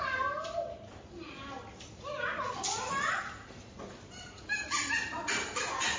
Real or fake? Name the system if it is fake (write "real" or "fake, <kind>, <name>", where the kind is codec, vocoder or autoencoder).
real